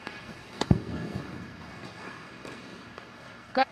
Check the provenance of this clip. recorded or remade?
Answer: remade